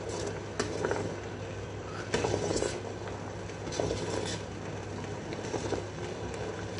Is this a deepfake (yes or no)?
no